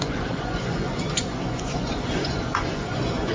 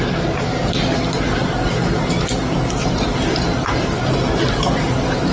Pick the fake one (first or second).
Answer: first